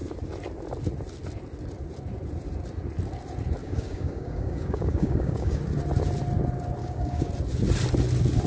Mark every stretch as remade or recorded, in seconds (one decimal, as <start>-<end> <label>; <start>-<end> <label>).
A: 0.0-3.6 recorded; 3.6-5.6 remade; 5.6-6.8 recorded; 6.8-7.3 remade; 7.3-8.5 recorded

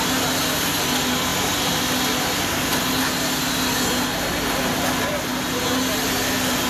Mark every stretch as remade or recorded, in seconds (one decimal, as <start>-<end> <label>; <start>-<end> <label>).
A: 0.0-6.7 recorded

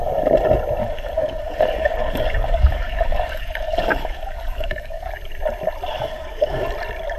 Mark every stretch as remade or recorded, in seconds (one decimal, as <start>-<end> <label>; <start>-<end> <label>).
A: 0.0-0.8 recorded; 0.8-5.1 remade; 5.1-5.9 recorded; 5.9-6.7 remade; 6.7-7.2 recorded

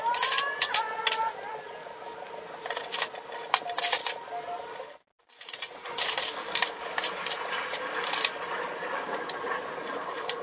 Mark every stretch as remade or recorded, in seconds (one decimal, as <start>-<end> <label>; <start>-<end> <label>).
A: 0.0-10.4 recorded

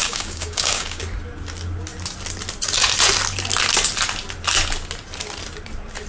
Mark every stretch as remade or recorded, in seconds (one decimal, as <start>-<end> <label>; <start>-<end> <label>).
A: 0.0-1.0 remade; 1.0-6.1 recorded

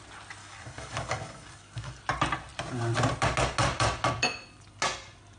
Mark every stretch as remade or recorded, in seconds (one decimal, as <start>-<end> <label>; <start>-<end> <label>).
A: 0.0-0.4 recorded; 0.4-2.0 remade; 2.0-5.4 recorded